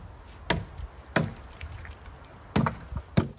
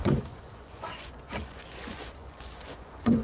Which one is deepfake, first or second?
second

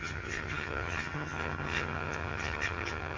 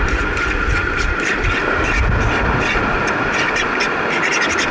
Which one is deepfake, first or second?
first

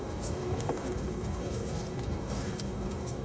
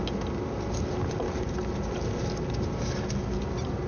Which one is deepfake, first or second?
first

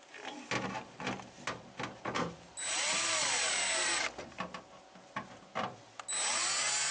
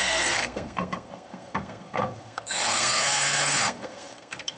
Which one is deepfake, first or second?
second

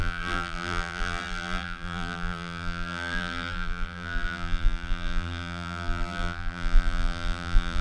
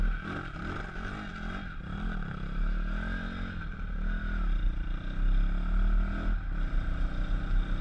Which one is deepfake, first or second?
first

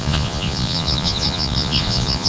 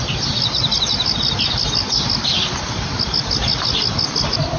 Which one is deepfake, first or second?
first